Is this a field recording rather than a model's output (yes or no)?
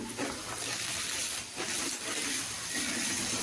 yes